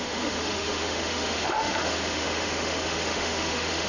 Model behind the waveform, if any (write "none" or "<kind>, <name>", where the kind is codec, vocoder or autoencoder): autoencoder, DAC-VAE